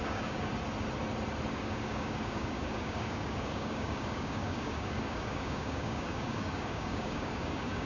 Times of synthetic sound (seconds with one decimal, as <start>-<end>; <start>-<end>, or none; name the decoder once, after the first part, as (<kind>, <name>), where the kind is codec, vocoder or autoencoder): 0.0-0.5 (codec, DAC); 1.5-7.9